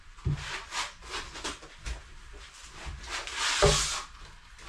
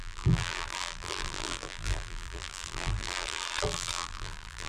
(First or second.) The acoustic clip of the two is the first